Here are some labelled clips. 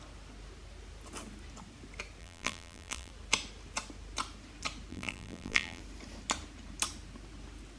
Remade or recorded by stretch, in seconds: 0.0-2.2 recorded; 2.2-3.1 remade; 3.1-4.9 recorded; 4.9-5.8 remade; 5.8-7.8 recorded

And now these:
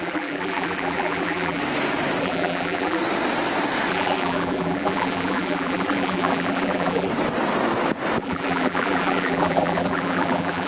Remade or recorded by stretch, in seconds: 0.0-1.6 remade; 1.6-2.2 recorded; 2.2-3.0 remade; 3.0-3.9 recorded; 3.9-7.1 remade; 7.1-8.2 recorded; 8.2-10.7 remade

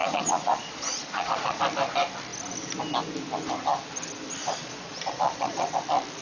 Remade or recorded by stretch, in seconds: 0.0-1.6 remade; 1.6-4.4 recorded; 4.4-5.7 remade; 5.7-6.2 recorded

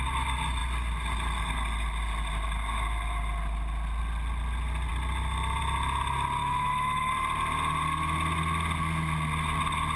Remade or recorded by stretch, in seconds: 0.0-6.4 recorded; 6.4-7.1 remade; 7.1-10.0 recorded

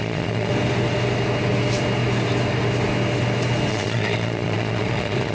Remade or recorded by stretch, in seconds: 0.0-0.5 remade; 0.5-3.7 recorded; 3.7-5.3 remade

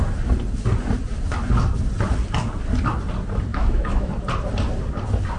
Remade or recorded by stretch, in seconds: 0.0-3.5 recorded; 3.5-4.1 remade; 4.1-5.4 recorded

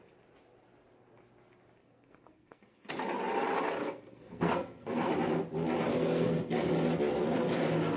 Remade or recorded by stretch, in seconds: 0.0-1.8 recorded; 1.8-2.9 remade; 2.9-3.8 recorded; 3.8-5.1 remade; 5.1-5.9 recorded; 5.9-6.7 remade; 6.7-8.0 recorded